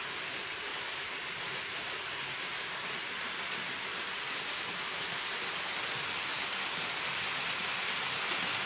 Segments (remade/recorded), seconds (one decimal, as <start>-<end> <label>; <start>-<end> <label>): 0.0-8.7 recorded